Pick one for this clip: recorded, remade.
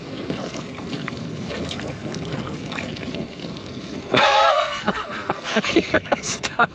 remade